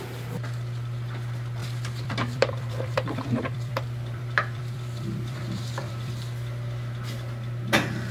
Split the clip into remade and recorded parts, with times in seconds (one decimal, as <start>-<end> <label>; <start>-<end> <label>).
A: 0.0-1.6 recorded; 1.6-6.1 remade; 6.1-8.1 recorded

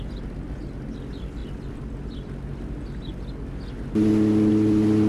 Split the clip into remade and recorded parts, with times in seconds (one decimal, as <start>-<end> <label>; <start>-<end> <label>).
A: 0.0-5.1 recorded

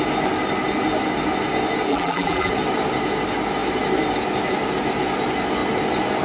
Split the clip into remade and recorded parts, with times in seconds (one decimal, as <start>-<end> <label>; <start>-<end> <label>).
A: 0.0-1.9 recorded; 1.9-2.5 remade; 2.5-6.2 recorded

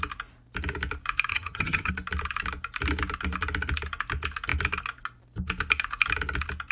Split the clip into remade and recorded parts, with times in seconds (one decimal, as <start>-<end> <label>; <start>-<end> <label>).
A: 0.0-1.3 recorded; 1.3-1.9 remade; 1.9-6.7 recorded

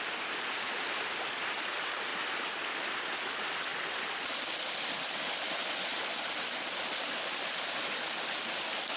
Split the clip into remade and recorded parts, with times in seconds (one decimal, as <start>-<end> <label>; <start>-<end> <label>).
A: 0.0-9.0 recorded

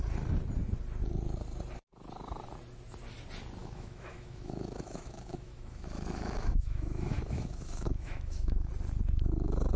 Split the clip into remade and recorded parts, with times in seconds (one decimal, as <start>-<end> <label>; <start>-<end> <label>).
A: 0.0-3.6 recorded; 3.6-8.7 remade; 8.7-9.8 recorded

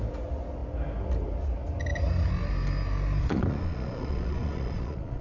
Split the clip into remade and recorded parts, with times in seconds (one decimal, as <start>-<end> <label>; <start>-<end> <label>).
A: 0.0-3.2 recorded; 3.2-5.2 remade

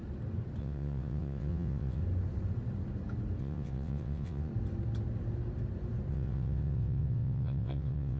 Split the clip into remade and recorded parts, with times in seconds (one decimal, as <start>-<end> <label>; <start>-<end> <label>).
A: 0.0-0.6 recorded; 0.6-2.0 remade; 2.0-3.4 recorded; 3.4-4.5 remade; 4.5-6.1 recorded; 6.1-8.2 remade